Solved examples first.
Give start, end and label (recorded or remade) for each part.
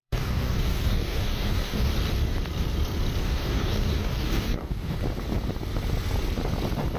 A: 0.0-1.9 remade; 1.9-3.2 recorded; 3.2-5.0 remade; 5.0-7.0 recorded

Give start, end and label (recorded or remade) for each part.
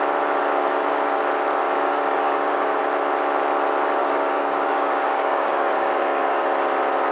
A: 0.0-0.4 recorded; 0.4-1.2 remade; 1.2-1.6 recorded; 1.6-2.8 remade; 2.8-4.0 recorded; 4.0-6.5 remade; 6.5-7.1 recorded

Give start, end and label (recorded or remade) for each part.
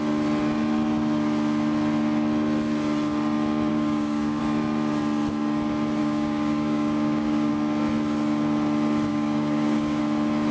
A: 0.0-3.7 recorded; 3.7-4.4 remade; 4.4-6.0 recorded; 6.0-7.5 remade; 7.5-9.1 recorded; 9.1-10.0 remade; 10.0-10.5 recorded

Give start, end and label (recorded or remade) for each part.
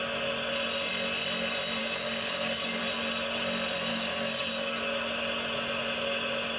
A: 0.0-1.8 recorded; 1.8-2.8 remade; 2.8-3.9 recorded; 3.9-4.8 remade; 4.8-6.6 recorded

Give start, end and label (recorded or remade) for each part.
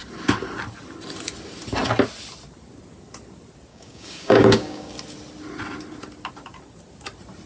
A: 0.0-3.7 recorded; 3.7-4.9 remade; 4.9-7.5 recorded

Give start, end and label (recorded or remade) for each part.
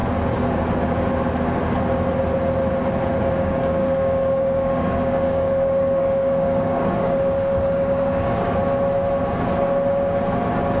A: 0.0-3.2 recorded; 3.2-8.6 remade; 8.6-10.8 recorded